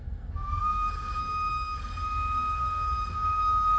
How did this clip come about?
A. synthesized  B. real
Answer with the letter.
A